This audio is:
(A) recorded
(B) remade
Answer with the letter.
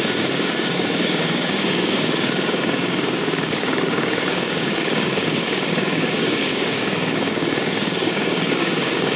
B